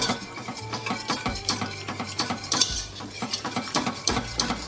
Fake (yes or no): yes